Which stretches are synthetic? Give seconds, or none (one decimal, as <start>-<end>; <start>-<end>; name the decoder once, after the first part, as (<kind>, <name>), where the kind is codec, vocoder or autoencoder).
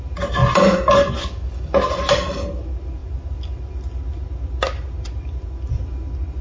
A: none